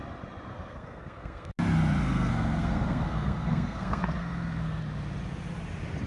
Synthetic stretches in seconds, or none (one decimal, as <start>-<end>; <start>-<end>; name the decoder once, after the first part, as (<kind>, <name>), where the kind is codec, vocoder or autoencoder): 0.5-1.5 (codec, SNAC); 2.0-4.8